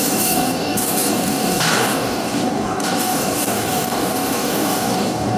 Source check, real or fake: fake